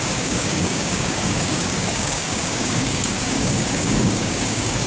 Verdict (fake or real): fake